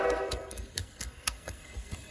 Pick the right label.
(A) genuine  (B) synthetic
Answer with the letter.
B